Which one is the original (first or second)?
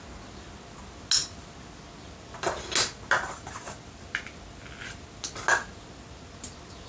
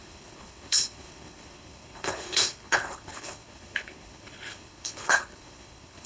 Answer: first